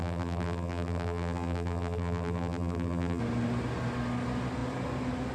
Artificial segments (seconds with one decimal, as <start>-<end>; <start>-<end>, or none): 0.0-3.2